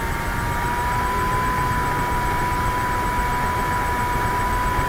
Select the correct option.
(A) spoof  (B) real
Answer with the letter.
B